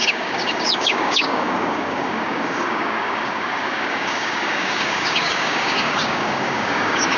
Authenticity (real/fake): fake